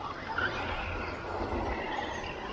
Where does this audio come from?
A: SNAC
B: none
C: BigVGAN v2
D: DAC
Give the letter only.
B